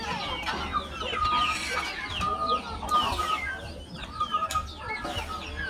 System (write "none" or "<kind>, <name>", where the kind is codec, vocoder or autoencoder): none